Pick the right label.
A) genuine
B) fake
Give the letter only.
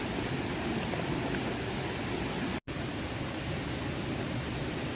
A